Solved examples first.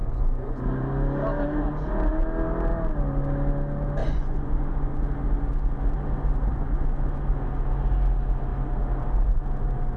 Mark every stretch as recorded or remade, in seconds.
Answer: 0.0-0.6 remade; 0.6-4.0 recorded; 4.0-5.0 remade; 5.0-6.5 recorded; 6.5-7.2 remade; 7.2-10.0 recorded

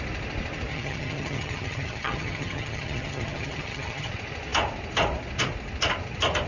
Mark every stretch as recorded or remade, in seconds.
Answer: 0.0-0.7 recorded; 0.7-4.1 remade; 4.1-6.5 recorded

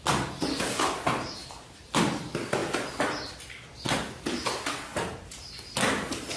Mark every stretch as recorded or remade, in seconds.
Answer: 0.0-1.4 recorded; 1.4-2.2 remade; 2.2-6.4 recorded

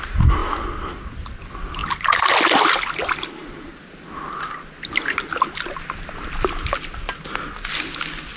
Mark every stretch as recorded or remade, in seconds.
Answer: 0.0-8.4 recorded

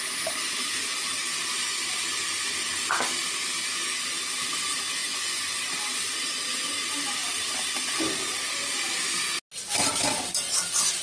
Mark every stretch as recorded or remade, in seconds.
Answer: 0.0-5.0 recorded; 5.0-5.5 remade; 5.5-11.0 recorded